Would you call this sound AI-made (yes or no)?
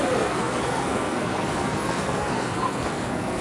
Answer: yes